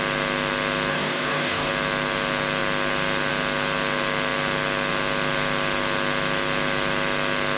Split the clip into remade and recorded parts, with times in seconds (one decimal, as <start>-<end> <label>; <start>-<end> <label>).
0.0-0.9 recorded; 0.9-1.7 remade; 1.7-7.6 recorded